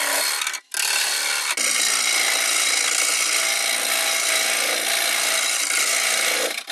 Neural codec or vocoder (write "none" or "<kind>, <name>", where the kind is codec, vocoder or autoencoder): none